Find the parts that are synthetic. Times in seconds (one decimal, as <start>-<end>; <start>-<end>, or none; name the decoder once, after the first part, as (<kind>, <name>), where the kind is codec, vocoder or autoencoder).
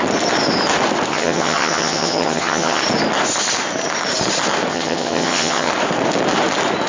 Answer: 1.1-2.8 (vocoder, HiFi-GAN); 4.7-5.7